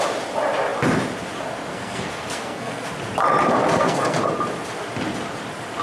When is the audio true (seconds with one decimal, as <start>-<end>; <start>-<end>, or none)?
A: 0.0-1.7; 2.9-3.6; 4.2-5.8